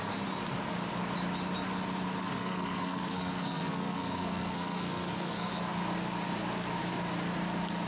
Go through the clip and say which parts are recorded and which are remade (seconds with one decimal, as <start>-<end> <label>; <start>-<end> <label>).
0.0-2.2 recorded; 2.2-5.5 remade; 5.5-7.9 recorded